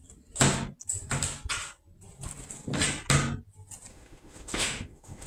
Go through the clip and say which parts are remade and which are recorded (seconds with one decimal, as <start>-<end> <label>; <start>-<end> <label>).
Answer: 0.0-3.9 recorded; 3.9-5.3 remade